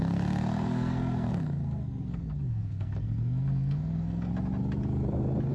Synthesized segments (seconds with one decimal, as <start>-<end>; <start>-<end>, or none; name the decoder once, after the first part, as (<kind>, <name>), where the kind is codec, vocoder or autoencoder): 0.0-4.3 (codec, SNAC)